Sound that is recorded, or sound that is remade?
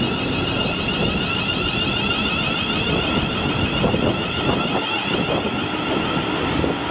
recorded